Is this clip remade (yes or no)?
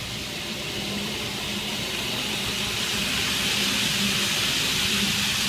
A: no